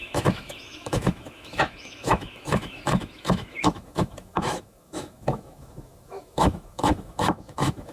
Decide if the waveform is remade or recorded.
remade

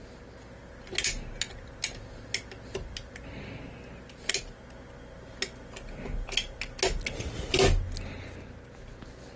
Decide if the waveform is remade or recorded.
recorded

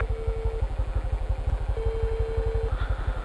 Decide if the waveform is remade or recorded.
recorded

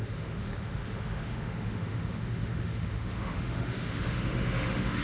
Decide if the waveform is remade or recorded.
remade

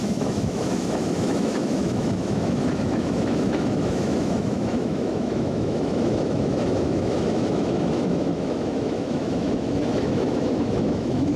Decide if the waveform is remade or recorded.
remade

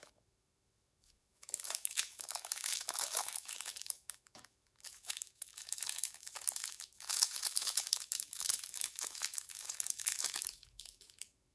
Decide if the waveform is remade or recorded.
remade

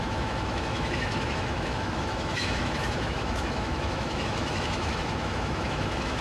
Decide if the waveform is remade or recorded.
remade